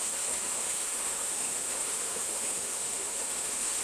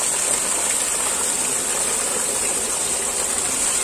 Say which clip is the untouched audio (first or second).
second